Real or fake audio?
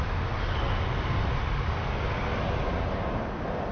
real